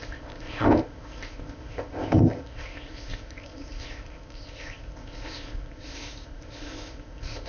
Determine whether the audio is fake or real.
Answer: fake